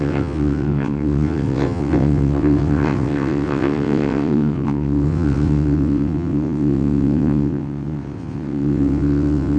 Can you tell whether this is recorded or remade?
remade